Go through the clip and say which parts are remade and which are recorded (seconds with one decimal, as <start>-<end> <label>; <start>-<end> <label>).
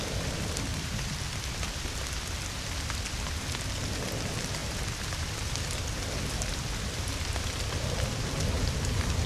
0.0-9.3 recorded